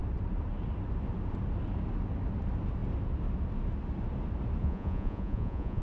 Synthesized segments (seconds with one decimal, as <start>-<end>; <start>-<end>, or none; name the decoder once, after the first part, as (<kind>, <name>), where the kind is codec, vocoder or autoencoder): 4.6-5.8 (vocoder, Vocos)